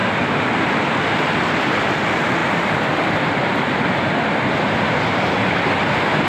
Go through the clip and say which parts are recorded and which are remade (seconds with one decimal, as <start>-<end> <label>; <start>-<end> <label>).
0.0-6.3 recorded